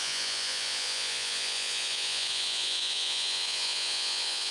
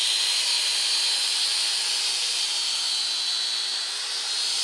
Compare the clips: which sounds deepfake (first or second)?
first